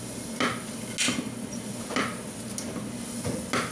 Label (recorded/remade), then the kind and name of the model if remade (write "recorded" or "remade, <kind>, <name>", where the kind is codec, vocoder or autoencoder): recorded